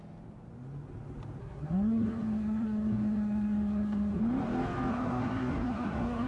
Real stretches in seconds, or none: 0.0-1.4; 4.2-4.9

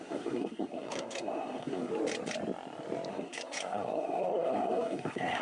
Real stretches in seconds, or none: 1.9-3.1

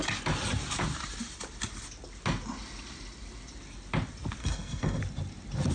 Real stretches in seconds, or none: 0.0-4.4; 5.0-5.7

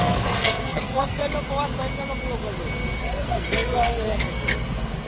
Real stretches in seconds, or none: 1.2-3.0